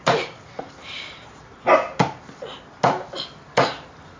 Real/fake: real